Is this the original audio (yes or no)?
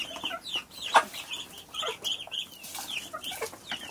yes